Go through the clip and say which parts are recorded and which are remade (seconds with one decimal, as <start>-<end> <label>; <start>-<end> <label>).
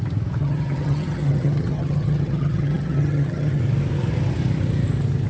0.0-0.4 recorded; 0.4-3.6 remade; 3.6-5.3 recorded